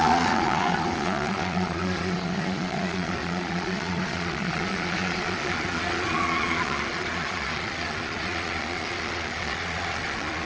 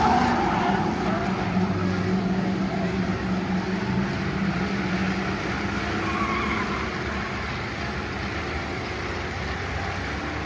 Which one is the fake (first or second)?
first